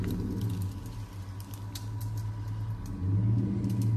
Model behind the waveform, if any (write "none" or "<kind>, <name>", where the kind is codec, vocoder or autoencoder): none